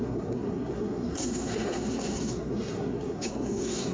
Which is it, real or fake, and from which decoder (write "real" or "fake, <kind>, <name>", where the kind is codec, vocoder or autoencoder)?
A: fake, codec, SNAC